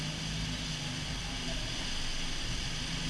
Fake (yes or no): no